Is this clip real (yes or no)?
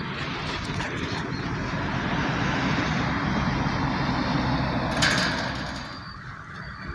yes